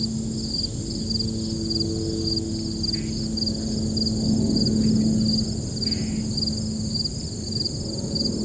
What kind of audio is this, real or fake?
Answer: real